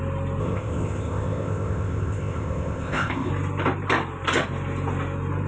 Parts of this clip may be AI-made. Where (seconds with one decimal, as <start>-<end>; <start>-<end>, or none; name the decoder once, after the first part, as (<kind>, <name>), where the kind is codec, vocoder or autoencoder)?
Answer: 0.4-3.3 (codec, ZipCodec)